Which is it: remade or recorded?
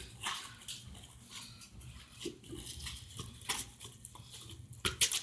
recorded